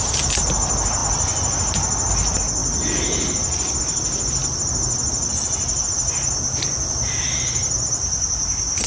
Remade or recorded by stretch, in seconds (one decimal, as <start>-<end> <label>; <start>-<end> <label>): 0.0-8.9 recorded